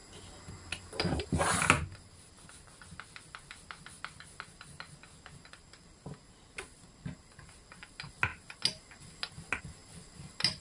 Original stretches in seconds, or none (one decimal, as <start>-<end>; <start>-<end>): 0.0-10.6